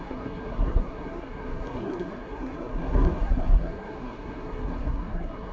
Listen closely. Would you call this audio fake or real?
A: fake